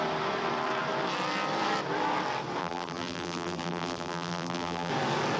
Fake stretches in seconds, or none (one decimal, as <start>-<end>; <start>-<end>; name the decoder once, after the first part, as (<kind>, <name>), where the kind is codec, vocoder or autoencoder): 2.6-4.9 (vocoder, BigVGAN v2)